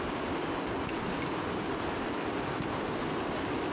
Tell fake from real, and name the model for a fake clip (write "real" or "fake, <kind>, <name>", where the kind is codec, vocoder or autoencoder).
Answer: real